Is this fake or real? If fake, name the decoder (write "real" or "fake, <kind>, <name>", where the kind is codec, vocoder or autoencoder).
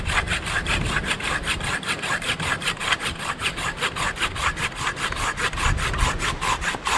real